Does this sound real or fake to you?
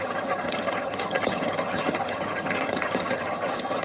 fake